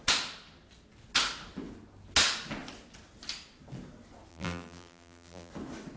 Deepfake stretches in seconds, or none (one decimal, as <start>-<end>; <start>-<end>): 4.3-5.5